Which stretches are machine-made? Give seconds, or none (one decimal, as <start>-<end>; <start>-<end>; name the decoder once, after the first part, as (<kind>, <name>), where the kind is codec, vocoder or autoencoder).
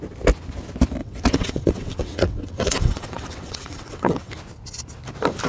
1.0-4.3 (vocoder, WaveNeXt)